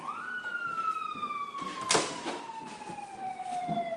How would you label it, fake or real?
fake